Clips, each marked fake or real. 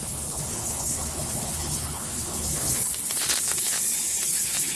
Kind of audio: fake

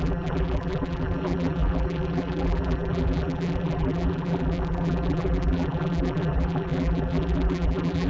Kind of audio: fake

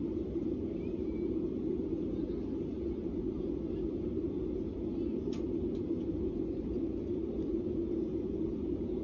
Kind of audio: real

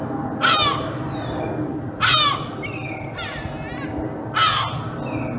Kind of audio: real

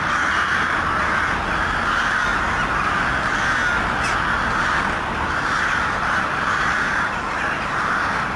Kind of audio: real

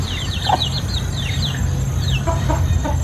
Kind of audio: fake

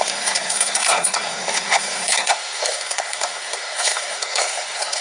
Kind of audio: fake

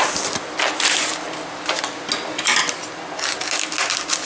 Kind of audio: real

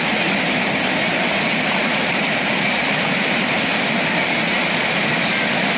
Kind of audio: real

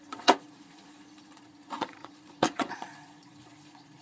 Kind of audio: fake